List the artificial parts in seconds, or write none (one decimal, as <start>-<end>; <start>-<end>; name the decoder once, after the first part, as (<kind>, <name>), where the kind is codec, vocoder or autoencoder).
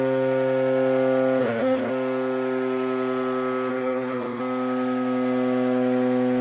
1.4-1.9 (codec, SNAC); 3.7-4.4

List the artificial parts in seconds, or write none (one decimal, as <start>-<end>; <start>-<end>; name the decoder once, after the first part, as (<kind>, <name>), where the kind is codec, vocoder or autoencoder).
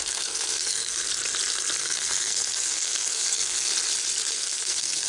0.0-1.1 (codec, SNAC); 1.8-3.7; 4.3-5.1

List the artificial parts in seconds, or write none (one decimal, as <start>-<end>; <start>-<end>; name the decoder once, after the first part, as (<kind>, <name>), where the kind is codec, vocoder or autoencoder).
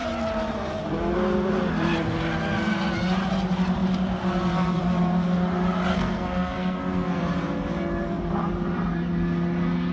5.9-7.2 (codec, SNAC)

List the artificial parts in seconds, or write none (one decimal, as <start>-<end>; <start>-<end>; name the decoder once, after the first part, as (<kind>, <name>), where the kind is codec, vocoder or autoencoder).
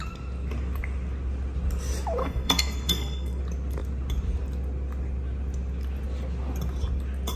2.2-3.4 (codec, SNAC)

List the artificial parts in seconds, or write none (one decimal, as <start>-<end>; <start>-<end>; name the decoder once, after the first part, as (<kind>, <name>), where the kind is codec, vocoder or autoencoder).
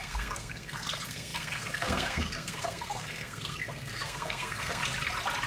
0.0-4.8 (codec, SNAC)